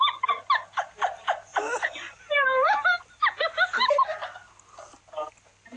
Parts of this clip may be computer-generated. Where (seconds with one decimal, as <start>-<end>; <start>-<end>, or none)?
1.5-5.0